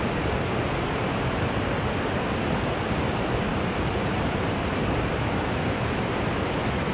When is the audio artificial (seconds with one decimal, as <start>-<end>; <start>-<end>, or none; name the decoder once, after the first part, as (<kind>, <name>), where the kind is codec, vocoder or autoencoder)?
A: none